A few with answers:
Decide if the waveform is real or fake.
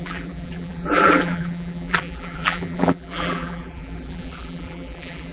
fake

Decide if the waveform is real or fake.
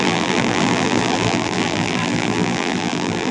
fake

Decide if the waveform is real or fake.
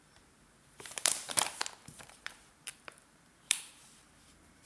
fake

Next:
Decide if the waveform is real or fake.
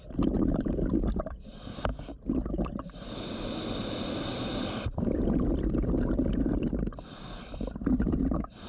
fake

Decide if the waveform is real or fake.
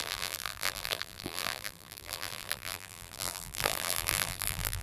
fake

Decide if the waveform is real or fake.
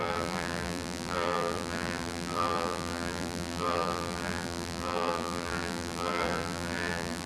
fake